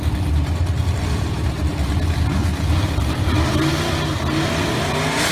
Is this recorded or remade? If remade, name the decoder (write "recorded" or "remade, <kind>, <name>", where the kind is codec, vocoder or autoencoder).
recorded